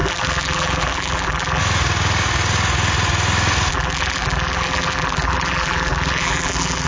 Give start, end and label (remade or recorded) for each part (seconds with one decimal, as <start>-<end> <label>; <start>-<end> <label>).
0.0-1.6 remade; 1.6-3.7 recorded; 3.7-6.9 remade